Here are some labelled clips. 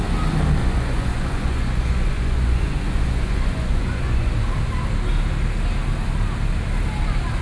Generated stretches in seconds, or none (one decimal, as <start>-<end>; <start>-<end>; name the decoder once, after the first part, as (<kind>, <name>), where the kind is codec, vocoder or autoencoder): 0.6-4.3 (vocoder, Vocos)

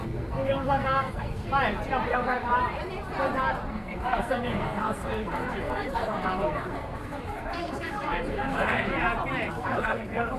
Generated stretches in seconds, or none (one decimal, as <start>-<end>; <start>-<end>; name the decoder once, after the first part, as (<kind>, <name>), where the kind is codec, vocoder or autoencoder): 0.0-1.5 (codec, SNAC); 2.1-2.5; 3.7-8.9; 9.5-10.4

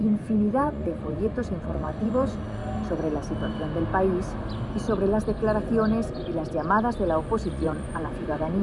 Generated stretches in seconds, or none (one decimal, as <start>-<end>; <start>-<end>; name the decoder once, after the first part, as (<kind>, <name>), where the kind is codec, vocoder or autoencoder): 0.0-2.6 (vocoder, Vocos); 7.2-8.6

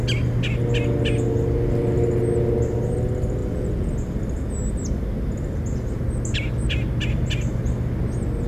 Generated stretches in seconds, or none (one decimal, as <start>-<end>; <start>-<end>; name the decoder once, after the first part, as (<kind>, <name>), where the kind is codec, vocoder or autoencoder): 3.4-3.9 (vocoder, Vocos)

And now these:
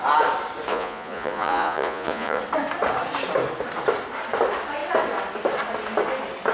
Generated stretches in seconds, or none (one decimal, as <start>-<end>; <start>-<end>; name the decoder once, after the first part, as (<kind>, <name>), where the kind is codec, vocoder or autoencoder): 0.7-2.4 (vocoder, Vocos)

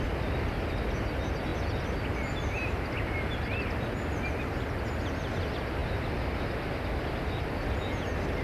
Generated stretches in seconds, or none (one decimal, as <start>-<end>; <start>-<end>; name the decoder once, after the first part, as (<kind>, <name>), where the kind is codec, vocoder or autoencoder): none

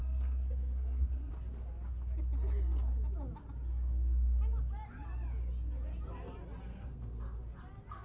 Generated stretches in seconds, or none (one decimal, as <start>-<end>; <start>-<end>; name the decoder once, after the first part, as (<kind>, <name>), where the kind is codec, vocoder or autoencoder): 0.0-1.3 (codec, SNAC); 6.7-7.2